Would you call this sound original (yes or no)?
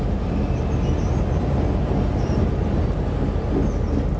yes